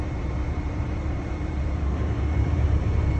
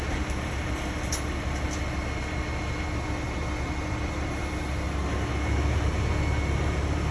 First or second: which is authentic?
second